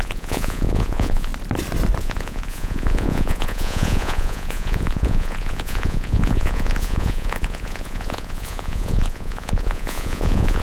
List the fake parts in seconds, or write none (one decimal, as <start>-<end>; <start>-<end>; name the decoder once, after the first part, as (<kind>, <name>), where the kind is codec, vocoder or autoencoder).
0.0-1.3 (vocoder, Vocos); 2.0-10.6